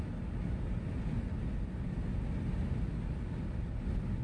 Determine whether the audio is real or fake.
real